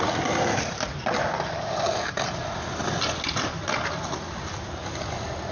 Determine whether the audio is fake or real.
real